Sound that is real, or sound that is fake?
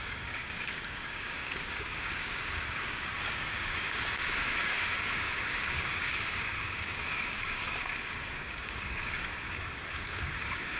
fake